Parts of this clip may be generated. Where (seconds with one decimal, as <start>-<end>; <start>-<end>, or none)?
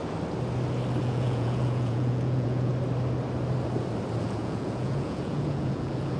1.0-2.7; 4.2-6.2